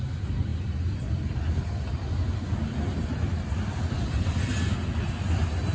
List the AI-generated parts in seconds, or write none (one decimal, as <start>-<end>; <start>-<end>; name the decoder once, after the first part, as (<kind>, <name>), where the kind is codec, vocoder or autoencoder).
none